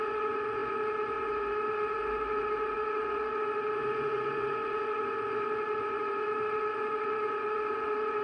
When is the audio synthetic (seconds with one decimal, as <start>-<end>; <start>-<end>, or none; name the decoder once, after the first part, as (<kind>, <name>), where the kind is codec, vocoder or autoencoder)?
0.0-8.2 (vocoder, Vocos)